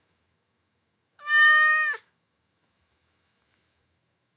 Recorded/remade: remade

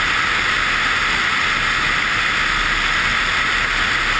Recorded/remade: recorded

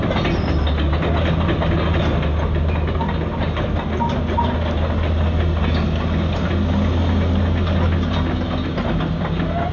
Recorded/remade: recorded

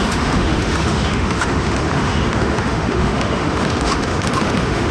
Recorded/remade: remade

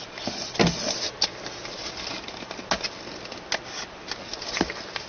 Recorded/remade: recorded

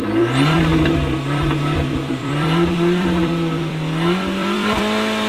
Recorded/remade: remade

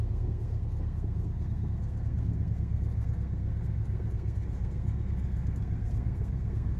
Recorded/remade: remade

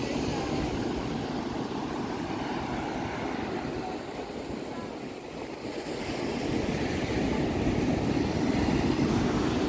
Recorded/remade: recorded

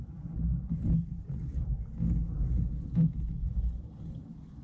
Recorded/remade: recorded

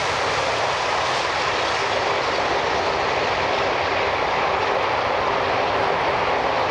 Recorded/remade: recorded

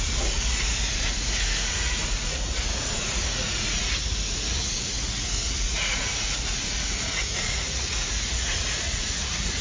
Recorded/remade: remade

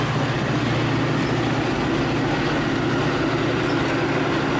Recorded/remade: recorded